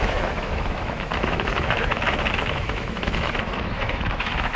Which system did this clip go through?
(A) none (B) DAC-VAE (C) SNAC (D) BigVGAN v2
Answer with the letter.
B